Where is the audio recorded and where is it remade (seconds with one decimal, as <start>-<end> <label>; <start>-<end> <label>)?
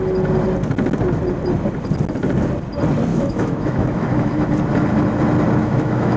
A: 0.0-3.1 recorded; 3.1-4.5 remade; 4.5-5.6 recorded; 5.6-6.2 remade